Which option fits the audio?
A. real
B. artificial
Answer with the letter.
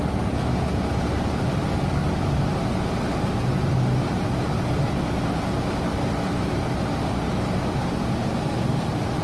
A